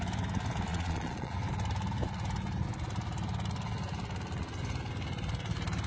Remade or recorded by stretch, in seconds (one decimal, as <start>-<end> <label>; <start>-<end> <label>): 0.0-0.7 recorded; 0.7-1.3 remade; 1.3-5.9 recorded